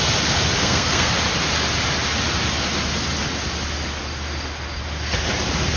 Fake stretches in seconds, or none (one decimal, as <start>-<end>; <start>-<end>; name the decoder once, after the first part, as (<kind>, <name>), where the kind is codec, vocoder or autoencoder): 0.6-1.1 (codec, SNAC)